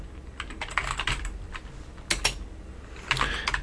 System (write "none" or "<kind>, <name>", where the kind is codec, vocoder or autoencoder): none